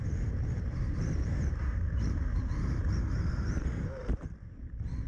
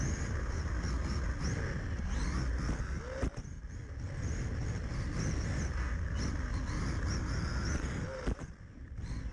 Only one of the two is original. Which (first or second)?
second